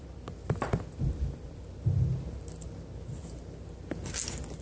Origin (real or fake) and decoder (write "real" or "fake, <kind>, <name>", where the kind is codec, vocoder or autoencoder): real